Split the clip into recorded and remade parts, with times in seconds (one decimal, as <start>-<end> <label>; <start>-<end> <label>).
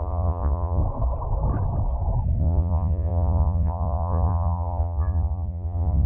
0.0-0.8 remade; 0.8-2.4 recorded; 2.4-6.1 remade